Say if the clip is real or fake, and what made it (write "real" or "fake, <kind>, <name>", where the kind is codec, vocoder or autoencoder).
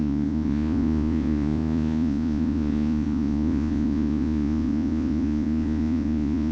fake, vocoder, Vocos